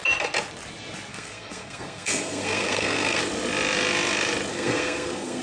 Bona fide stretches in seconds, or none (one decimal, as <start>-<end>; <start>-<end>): 0.0-1.1; 3.2-4.5